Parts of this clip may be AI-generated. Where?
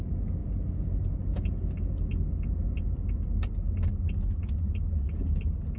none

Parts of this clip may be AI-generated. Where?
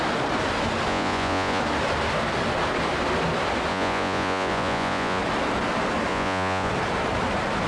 0.9-1.6 (vocoder, Vocos); 3.7-5.2; 6.1-6.7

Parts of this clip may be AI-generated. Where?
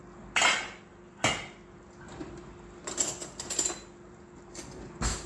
none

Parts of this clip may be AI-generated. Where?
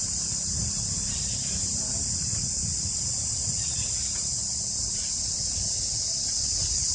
none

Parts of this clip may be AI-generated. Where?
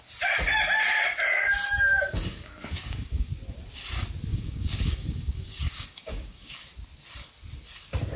1.9-3.3 (codec, DAC); 4.3-6.6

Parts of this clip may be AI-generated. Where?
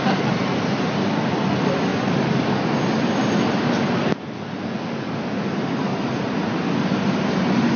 0.0-0.4 (vocoder, BigVGAN v2); 1.5-1.9; 5.5-5.9; 6.8-7.8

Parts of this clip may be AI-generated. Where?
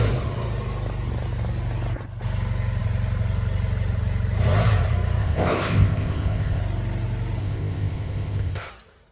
5.2-6.6 (codec, ZipCodec); 7.4-8.7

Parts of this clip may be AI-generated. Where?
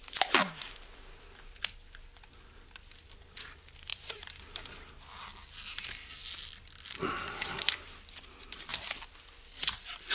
3.9-4.4 (vocoder, BigVGAN v2)